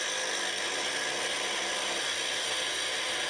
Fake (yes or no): no